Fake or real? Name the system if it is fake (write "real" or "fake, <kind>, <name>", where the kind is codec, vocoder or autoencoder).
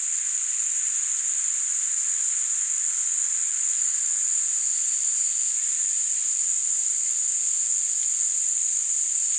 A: real